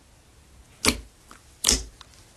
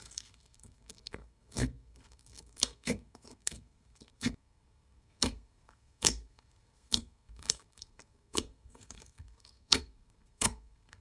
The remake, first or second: second